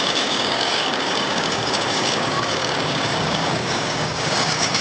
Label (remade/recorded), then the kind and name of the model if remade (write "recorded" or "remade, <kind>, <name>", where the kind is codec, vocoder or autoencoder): remade, codec, DAC